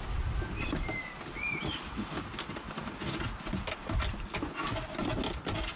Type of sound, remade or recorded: recorded